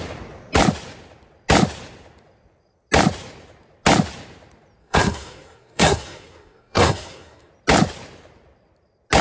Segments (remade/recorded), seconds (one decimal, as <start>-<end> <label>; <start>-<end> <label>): 0.0-4.8 recorded; 4.8-7.5 remade; 7.5-9.2 recorded